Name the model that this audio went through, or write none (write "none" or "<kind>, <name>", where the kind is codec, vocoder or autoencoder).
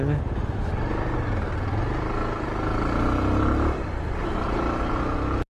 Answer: none